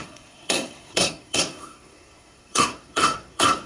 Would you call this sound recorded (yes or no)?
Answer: no